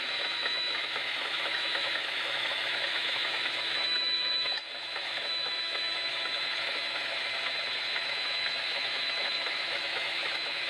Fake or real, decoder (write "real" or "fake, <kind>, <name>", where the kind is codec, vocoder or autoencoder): fake, autoencoder, DAC-VAE